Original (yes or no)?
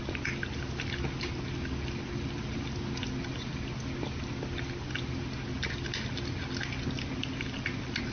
yes